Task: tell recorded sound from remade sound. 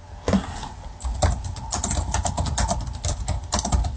recorded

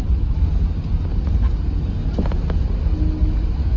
recorded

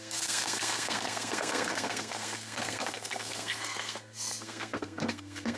remade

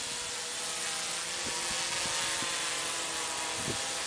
recorded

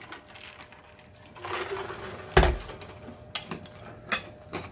recorded